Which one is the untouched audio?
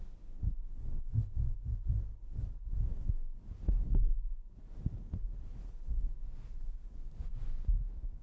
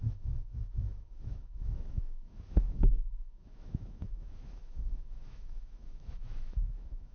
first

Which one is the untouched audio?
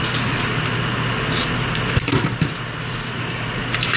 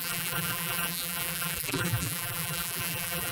first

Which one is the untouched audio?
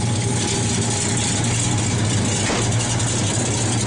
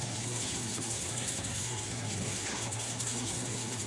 first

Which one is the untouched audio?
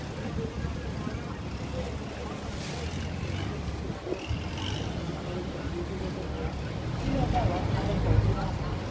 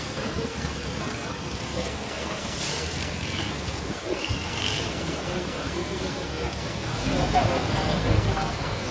first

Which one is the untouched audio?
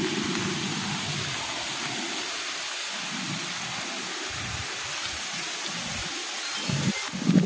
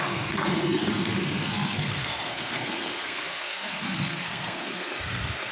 first